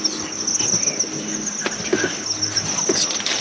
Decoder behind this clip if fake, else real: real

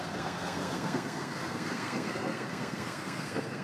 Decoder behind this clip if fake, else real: fake, codec, SNAC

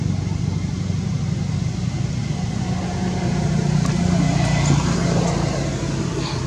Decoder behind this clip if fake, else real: real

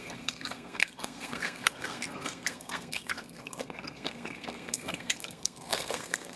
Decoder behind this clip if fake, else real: fake, codec, SNAC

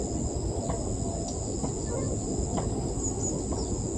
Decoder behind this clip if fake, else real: real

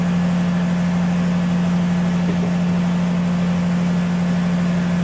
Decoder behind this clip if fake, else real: real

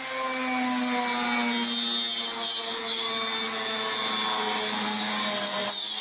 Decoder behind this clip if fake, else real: real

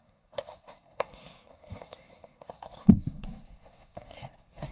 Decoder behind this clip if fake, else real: fake, codec, SNAC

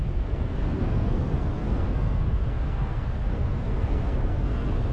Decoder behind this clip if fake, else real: fake, codec, SNAC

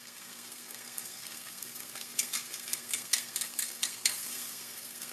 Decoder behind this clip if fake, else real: fake, codec, SNAC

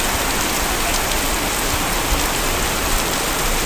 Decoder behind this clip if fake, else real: real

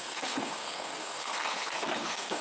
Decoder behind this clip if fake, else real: fake, codec, SNAC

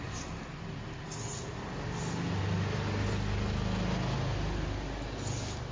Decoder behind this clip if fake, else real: real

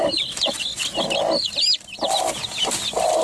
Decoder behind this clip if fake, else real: real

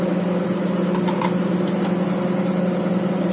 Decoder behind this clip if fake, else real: real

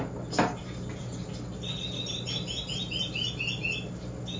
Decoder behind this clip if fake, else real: real